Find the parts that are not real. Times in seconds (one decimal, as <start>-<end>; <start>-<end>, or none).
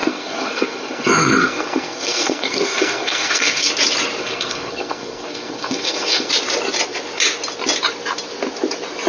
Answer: 0.0-3.7; 4.2-6.3